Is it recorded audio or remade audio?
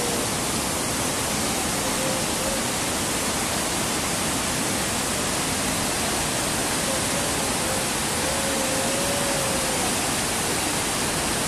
recorded